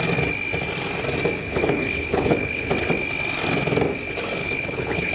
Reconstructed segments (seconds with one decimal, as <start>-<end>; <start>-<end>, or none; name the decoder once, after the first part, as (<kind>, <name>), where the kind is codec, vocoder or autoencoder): 1.4-2.7 (codec, HILCodec); 4.4-5.1